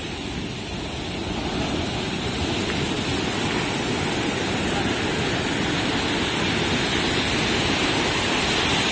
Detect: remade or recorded recorded